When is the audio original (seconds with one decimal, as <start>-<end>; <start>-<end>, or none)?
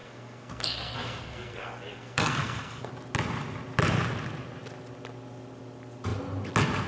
2.9-6.9